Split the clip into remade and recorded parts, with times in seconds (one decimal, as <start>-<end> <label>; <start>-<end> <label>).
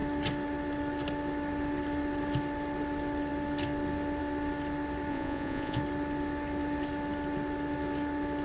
0.0-5.1 recorded; 5.1-5.8 remade; 5.8-8.4 recorded